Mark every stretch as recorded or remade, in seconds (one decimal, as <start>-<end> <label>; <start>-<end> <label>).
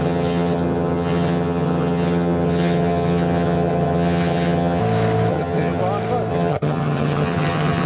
0.0-4.8 remade; 4.8-5.3 recorded; 5.3-5.8 remade; 5.8-6.3 recorded; 6.3-7.9 remade